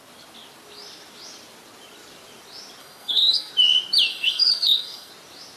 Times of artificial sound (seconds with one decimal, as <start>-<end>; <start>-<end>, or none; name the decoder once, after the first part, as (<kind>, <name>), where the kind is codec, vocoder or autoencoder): 2.8-3.5 (codec, SNAC); 4.1-5.1